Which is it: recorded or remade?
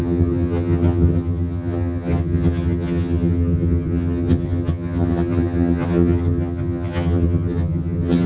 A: remade